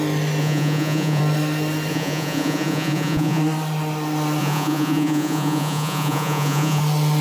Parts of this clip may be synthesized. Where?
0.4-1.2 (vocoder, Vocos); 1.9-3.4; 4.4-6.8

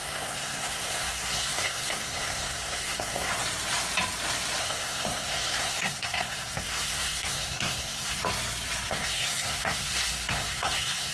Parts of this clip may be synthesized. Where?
0.0-3.3 (codec, SNAC); 4.6-8.2; 8.9-11.1

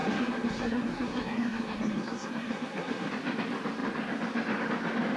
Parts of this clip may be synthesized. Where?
0.0-3.1 (codec, SNAC)

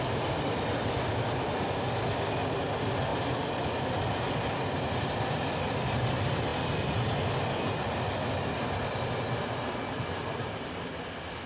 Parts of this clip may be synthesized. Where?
none

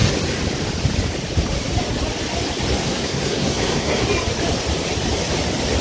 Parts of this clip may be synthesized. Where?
2.8-4.0 (codec, SNAC)

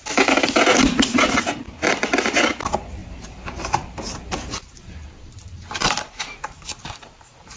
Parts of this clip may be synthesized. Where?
3.0-7.6 (vocoder, BigVGAN v2)

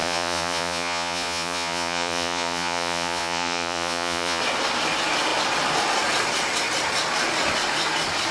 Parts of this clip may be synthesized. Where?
0.0-4.4 (vocoder, Vocos)